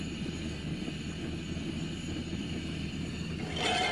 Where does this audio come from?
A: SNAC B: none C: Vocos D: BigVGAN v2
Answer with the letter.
B